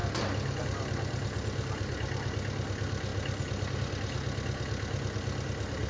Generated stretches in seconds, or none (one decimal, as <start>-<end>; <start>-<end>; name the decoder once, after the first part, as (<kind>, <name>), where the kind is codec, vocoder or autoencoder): none